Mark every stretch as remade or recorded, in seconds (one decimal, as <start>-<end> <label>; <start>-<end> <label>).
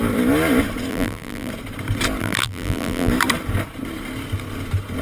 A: 0.0-0.9 recorded; 0.9-1.5 remade; 1.5-2.2 recorded; 2.2-3.1 remade; 3.1-5.0 recorded